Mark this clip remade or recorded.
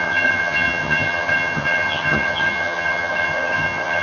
remade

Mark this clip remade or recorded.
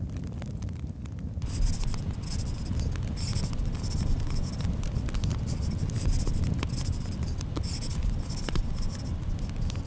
recorded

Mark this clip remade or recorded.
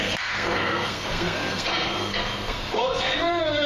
remade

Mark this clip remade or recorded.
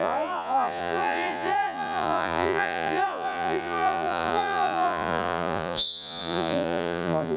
remade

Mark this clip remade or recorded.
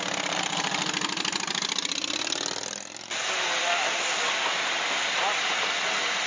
recorded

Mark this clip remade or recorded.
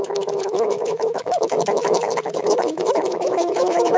remade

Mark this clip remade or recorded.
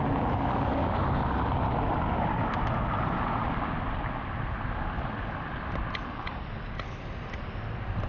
recorded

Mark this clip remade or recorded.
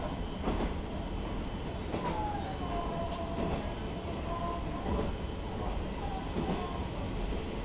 recorded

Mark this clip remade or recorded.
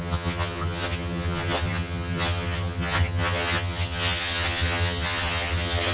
remade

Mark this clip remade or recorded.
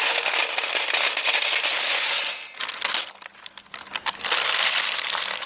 recorded